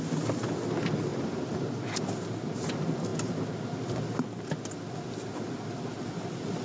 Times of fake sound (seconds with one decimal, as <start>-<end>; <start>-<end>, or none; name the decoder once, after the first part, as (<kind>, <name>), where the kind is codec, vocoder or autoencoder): none